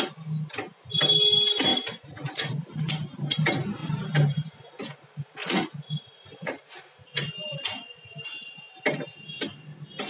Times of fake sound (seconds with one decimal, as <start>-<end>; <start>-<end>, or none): 1.7-2.9; 5.4-6.5